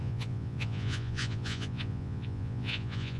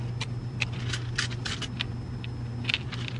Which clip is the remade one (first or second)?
first